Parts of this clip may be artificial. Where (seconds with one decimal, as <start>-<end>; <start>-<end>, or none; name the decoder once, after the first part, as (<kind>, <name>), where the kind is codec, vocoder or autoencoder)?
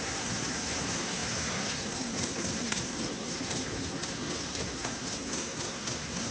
0.0-6.3 (codec, SNAC)